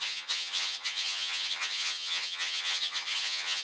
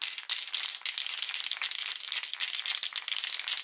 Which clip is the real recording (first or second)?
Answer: second